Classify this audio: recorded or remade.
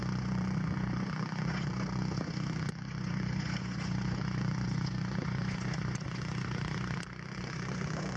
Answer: remade